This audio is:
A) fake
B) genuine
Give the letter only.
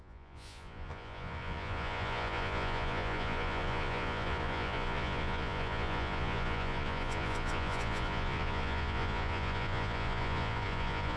A